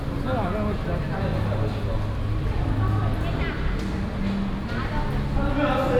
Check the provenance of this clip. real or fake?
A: real